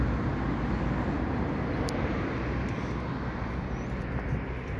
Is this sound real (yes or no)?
yes